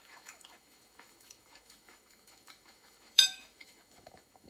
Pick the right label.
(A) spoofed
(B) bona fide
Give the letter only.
A